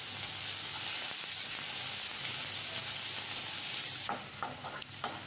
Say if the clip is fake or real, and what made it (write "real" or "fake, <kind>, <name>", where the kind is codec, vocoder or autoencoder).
real